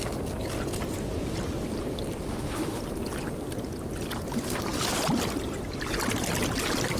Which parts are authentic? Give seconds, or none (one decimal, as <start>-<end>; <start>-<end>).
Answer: 0.0-2.3; 2.8-7.0